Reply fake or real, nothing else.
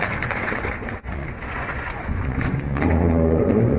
fake